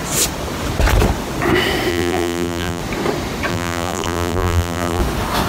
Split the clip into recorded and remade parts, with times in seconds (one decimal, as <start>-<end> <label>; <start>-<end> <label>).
0.0-1.9 recorded; 1.9-2.8 remade; 2.8-3.5 recorded; 3.5-5.0 remade; 5.0-5.5 recorded